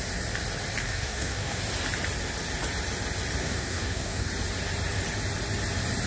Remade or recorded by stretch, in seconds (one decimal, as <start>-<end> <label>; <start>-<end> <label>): 0.0-0.8 recorded; 0.8-1.6 remade; 1.6-3.4 recorded; 3.4-4.3 remade; 4.3-6.1 recorded